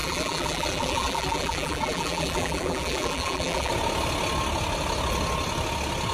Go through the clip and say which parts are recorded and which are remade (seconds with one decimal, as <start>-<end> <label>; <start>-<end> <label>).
0.0-3.7 remade; 3.7-6.1 recorded